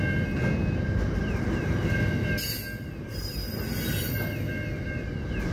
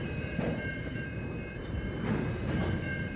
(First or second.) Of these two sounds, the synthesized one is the second